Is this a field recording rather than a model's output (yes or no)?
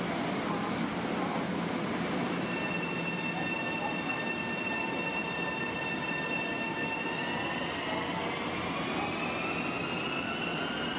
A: yes